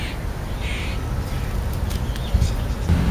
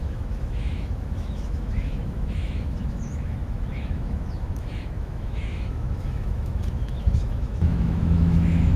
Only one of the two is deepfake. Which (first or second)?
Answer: second